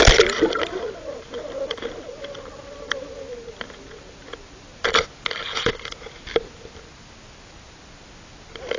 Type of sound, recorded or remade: recorded